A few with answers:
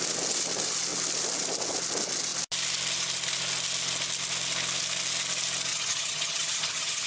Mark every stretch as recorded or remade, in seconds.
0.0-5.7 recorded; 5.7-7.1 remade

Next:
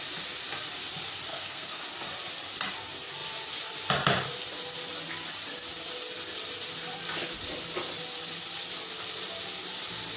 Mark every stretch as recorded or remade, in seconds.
0.0-1.3 recorded; 1.3-1.8 remade; 1.8-10.2 recorded

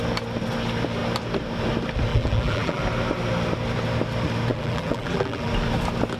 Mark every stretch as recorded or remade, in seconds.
0.0-2.1 recorded; 2.1-2.8 remade; 2.8-4.5 recorded; 4.5-5.5 remade; 5.5-6.2 recorded

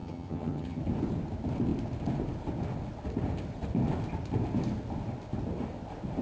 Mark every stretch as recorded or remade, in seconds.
0.0-0.8 remade; 0.8-6.2 recorded

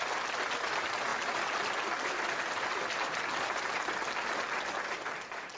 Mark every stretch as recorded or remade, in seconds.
0.0-5.6 recorded

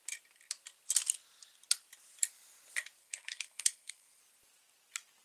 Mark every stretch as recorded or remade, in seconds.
0.0-3.0 recorded; 3.0-4.2 remade; 4.2-5.2 recorded

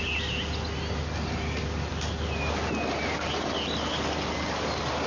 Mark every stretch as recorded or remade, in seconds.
0.0-5.1 recorded

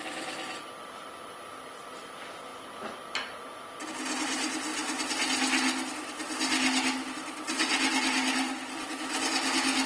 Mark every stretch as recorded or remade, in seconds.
0.0-2.5 remade; 2.5-3.9 recorded; 3.9-4.7 remade; 4.7-9.9 recorded